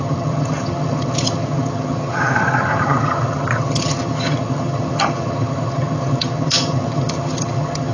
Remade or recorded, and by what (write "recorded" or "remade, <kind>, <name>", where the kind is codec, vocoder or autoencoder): remade, vocoder, HiFi-GAN